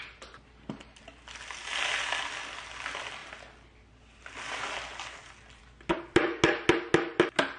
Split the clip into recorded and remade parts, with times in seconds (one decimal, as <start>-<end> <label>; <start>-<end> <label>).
0.0-7.6 recorded